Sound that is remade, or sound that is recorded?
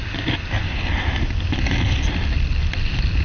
recorded